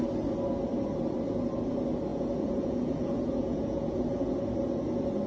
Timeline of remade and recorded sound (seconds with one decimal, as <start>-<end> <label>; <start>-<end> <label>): 0.0-2.1 recorded; 2.1-4.3 remade; 4.3-5.3 recorded